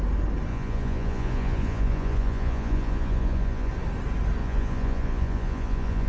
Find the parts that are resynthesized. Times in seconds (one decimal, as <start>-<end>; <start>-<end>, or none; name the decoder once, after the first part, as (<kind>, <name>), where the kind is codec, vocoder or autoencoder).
0.5-3.7 (vocoder, Vocos); 4.4-6.1